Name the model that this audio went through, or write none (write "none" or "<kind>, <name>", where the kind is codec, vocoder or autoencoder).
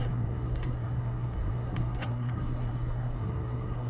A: codec, SNAC